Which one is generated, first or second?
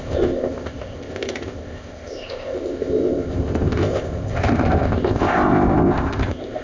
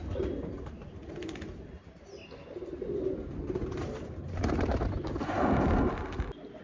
first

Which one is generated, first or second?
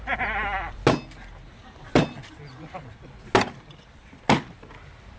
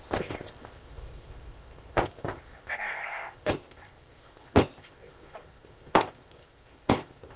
second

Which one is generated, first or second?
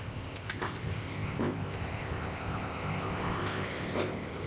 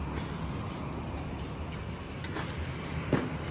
first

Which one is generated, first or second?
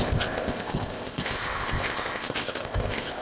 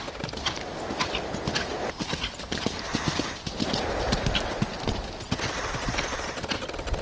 first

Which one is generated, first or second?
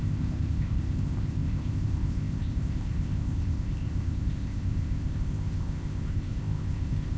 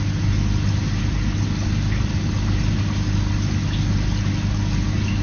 first